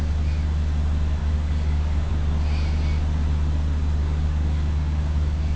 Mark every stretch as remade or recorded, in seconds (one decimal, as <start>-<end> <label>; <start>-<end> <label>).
0.0-1.2 recorded; 1.2-2.1 remade; 2.1-4.0 recorded; 4.0-5.6 remade